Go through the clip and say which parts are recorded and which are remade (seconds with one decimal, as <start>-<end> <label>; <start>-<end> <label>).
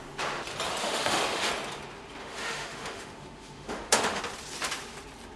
0.0-0.8 recorded; 0.8-1.5 remade; 1.5-2.2 recorded; 2.2-4.2 remade; 4.2-5.4 recorded